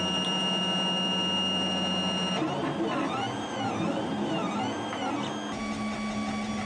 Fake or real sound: real